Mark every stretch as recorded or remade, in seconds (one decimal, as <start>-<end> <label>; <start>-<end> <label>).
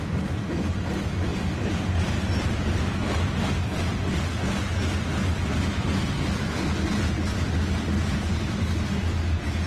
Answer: 0.0-1.3 recorded; 1.3-2.3 remade; 2.3-9.7 recorded